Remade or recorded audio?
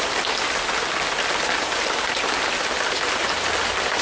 recorded